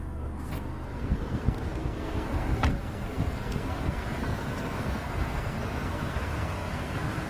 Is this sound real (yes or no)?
no